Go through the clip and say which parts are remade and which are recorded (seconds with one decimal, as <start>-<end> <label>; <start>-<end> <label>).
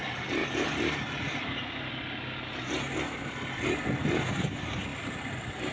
0.0-0.4 remade; 0.4-3.8 recorded; 3.8-5.7 remade